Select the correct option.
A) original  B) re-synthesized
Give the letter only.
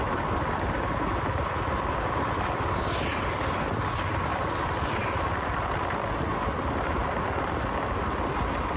A